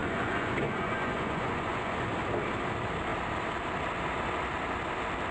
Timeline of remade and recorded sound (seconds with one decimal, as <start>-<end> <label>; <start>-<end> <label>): 0.0-2.1 remade; 2.1-5.3 recorded